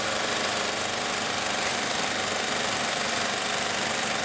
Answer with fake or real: fake